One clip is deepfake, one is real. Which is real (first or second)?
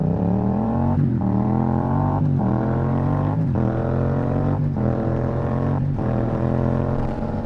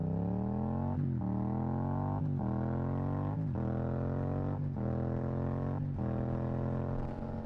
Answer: second